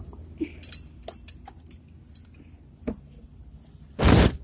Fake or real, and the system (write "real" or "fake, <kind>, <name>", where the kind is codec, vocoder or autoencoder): real